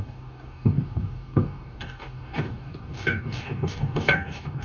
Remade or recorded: remade